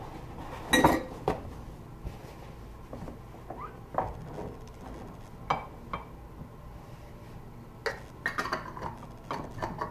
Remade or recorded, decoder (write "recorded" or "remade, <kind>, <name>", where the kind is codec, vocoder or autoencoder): recorded